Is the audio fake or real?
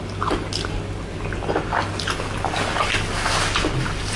real